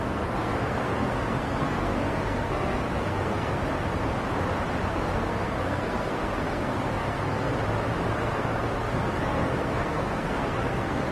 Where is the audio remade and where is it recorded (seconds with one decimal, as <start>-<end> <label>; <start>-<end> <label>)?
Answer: 0.0-3.6 remade; 3.6-4.9 recorded; 4.9-7.5 remade; 7.5-8.1 recorded; 8.1-11.1 remade